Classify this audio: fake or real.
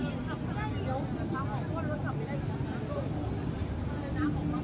real